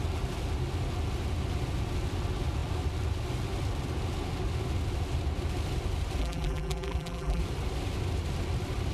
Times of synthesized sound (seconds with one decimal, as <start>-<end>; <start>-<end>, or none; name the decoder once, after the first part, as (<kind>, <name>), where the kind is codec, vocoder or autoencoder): 6.2-7.4 (vocoder, BigVGAN v2)